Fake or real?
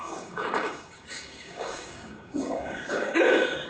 fake